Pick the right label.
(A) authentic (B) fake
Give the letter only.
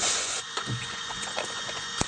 B